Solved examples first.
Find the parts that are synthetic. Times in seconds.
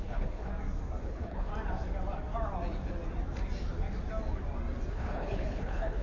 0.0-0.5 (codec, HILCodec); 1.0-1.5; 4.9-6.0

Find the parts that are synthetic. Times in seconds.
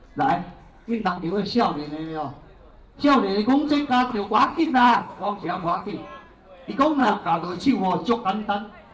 0.6-1.6 (codec, HILCodec); 4.1-5.9; 7.0-7.7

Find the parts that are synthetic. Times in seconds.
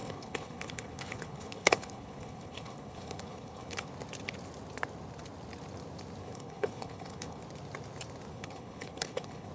0.0-3.9 (codec, HILCodec); 6.2-7.4; 8.3-9.5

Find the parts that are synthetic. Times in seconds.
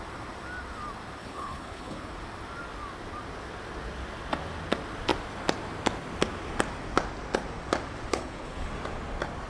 1.2-2.1 (codec, HILCodec); 8.1-8.7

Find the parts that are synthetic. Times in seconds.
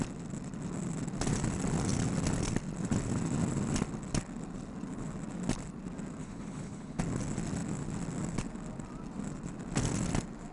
6.2-7.0 (codec, HILCodec)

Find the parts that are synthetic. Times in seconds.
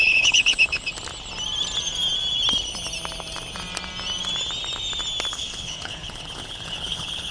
0.0-0.9 (codec, HILCodec); 5.3-7.3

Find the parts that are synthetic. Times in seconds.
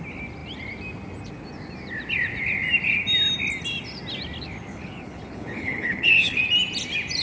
4.7-6.4 (codec, HILCodec)